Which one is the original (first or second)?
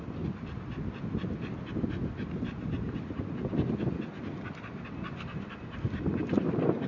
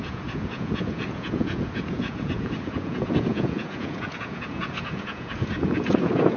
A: first